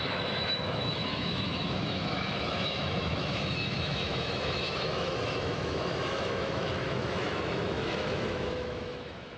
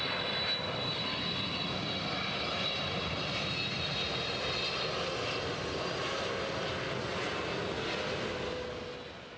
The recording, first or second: second